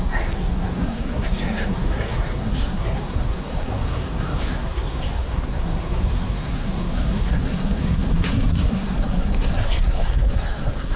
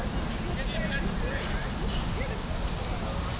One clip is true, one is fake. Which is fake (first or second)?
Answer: first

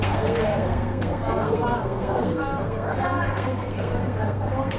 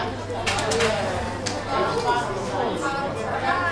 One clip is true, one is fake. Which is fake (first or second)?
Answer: first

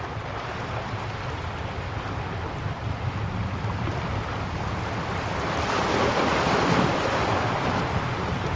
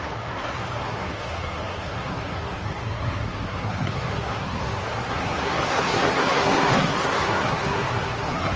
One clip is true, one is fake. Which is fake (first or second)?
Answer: second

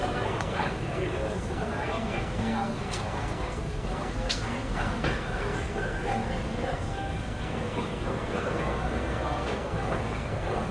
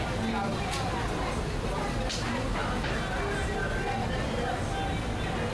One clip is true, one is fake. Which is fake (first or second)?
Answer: first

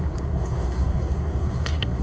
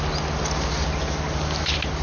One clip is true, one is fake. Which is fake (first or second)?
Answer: first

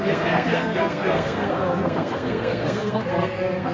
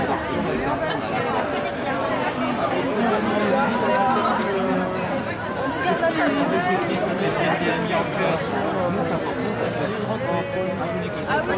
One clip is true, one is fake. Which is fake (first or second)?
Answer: first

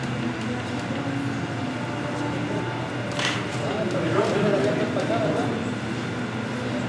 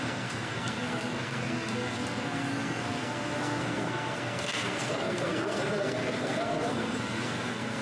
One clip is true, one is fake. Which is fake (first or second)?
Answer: second